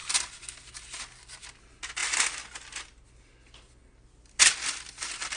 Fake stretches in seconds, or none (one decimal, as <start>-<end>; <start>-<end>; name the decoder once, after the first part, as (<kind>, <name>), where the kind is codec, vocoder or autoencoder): none